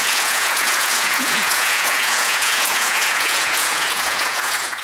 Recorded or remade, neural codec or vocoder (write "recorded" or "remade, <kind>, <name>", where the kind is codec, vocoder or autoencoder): remade, vocoder, Vocos